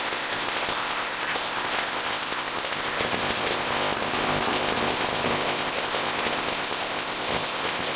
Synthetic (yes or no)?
yes